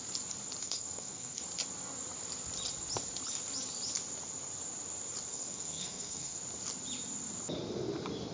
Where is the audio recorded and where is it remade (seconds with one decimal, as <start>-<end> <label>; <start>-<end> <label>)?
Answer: 0.0-0.6 recorded; 0.6-1.4 remade; 1.4-5.3 recorded; 5.3-6.4 remade; 6.4-8.3 recorded